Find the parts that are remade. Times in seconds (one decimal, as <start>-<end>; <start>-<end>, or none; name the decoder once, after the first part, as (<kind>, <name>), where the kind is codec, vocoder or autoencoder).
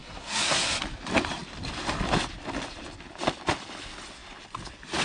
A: 0.0-0.8 (codec, SNAC)